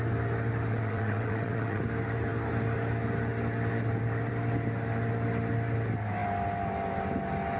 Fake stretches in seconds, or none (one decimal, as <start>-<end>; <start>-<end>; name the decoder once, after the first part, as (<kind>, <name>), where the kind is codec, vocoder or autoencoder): 0.7-1.8 (vocoder, WaveNeXt)